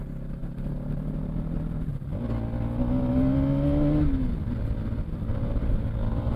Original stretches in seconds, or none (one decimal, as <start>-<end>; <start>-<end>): 0.0-5.3